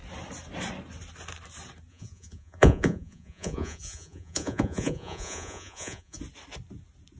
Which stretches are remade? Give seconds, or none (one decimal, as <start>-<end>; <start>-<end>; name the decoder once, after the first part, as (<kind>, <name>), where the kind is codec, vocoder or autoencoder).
1.9-6.2 (vocoder, Vocos)